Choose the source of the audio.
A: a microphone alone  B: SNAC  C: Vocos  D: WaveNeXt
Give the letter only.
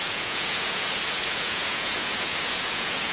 C